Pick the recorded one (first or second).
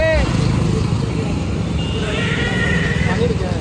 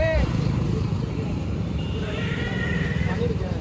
first